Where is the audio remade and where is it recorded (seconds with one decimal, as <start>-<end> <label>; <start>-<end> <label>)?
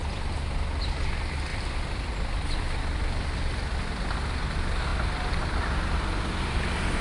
0.0-7.0 recorded